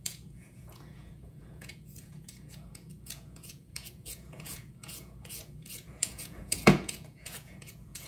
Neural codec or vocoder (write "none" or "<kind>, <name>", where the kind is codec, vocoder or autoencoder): vocoder, Vocos